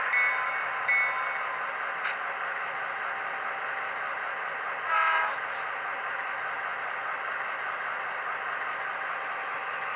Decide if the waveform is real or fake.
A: real